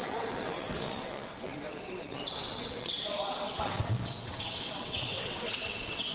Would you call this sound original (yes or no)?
no